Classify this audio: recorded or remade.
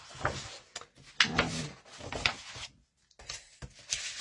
recorded